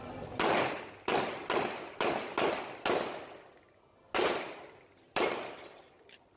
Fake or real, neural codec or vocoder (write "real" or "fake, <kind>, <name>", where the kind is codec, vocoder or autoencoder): real